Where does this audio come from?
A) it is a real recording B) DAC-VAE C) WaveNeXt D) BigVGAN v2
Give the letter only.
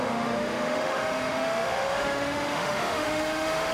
B